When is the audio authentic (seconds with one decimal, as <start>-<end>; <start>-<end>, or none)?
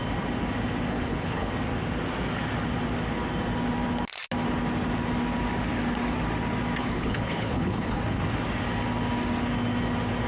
0.0-0.9; 1.5-6.8; 8.0-10.3